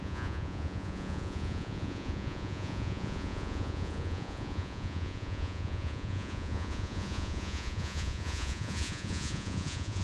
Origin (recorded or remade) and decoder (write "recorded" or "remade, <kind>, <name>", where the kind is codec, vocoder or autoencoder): remade, vocoder, Vocos